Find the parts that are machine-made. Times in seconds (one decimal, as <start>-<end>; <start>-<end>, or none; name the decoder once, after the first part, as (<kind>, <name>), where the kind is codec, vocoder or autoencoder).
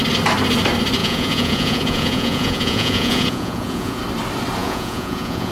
1.0-4.0 (vocoder, Vocos); 4.6-5.5